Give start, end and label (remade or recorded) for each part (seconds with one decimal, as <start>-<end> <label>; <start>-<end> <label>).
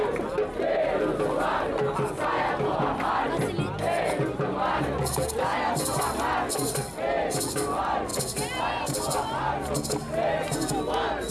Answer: 0.0-11.3 recorded